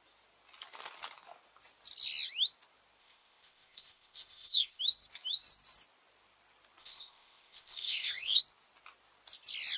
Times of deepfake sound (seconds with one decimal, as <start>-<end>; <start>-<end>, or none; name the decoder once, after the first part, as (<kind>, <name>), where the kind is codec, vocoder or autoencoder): 3.0-4.8 (codec, ZipCodec); 6.8-8.4